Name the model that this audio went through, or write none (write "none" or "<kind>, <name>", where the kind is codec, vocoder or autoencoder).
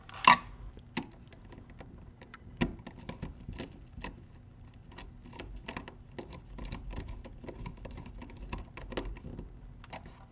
none